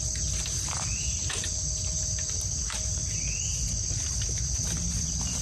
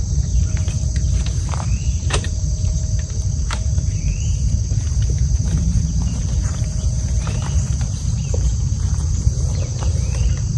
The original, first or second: first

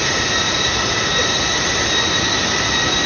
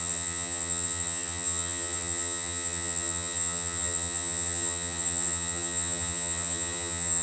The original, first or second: first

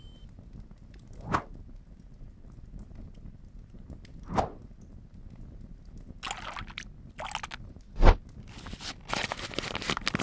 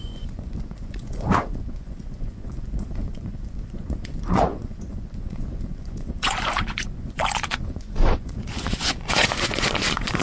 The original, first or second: first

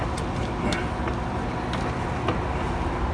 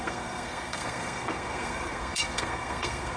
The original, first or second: first